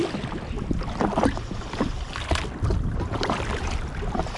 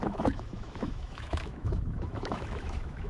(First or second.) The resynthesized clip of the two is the second